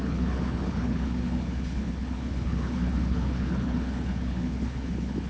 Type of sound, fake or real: fake